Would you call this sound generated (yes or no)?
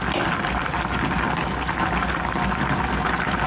no